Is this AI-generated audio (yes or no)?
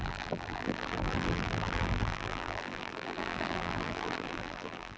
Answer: yes